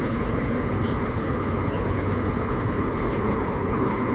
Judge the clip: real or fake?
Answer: fake